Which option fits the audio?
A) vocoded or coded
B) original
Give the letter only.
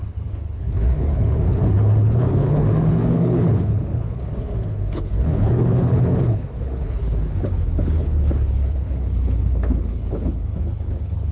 A